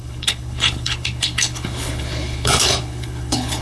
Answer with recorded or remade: remade